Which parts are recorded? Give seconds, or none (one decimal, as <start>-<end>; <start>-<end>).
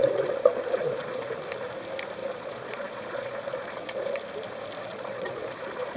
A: 1.2-2.2; 4.2-4.9